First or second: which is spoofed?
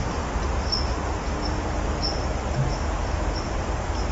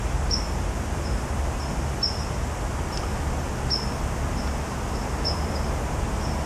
first